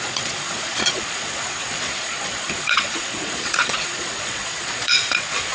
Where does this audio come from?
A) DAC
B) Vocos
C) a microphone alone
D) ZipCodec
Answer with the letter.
B